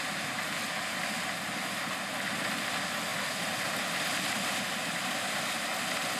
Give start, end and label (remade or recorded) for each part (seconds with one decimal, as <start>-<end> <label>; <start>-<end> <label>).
0.0-6.2 recorded